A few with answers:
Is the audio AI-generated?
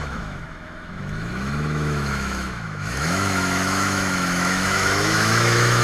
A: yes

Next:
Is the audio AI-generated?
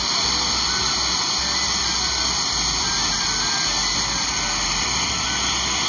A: no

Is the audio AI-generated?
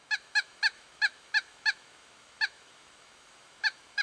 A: yes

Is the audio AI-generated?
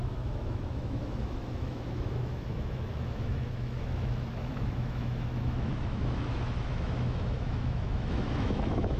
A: yes